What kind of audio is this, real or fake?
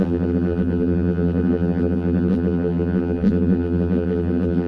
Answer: fake